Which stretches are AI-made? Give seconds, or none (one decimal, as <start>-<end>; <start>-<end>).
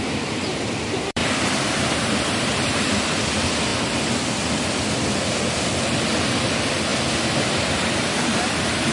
0.0-3.7; 5.5-6.9; 7.6-8.9